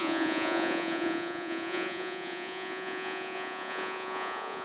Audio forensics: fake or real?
fake